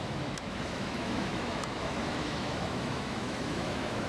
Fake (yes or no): yes